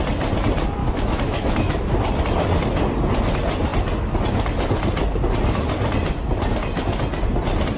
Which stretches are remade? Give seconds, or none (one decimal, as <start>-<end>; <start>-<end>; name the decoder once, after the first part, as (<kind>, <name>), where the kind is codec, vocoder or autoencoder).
0.8-1.8 (autoencoder, DAC-VAE)